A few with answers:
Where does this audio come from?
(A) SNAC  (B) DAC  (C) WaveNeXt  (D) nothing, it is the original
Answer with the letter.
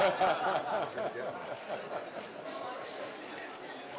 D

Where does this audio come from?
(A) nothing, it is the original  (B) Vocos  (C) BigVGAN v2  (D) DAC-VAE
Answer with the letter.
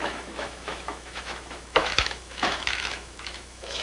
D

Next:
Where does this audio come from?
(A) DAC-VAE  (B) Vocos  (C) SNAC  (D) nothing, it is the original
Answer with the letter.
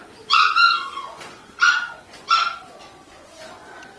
B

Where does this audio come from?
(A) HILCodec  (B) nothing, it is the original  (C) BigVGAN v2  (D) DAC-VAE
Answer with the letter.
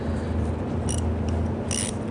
B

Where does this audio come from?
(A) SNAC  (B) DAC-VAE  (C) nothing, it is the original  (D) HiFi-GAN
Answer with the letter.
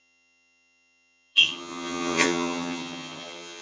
D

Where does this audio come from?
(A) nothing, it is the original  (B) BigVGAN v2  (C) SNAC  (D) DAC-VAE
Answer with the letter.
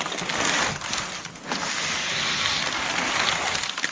A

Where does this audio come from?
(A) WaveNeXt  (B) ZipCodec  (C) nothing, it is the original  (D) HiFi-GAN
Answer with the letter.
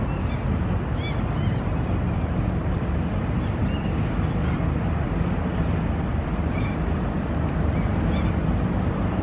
C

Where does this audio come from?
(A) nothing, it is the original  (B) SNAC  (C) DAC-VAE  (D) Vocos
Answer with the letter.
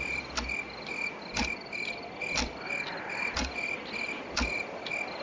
A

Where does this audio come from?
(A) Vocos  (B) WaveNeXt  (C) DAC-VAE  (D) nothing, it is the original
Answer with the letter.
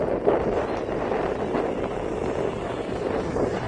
D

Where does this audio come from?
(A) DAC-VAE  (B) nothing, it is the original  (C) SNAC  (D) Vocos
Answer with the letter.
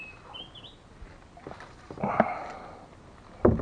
B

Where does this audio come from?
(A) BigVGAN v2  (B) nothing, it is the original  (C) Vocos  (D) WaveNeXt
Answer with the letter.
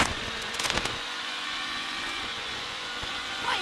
C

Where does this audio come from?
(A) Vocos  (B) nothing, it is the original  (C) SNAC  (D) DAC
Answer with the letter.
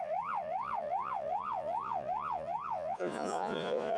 A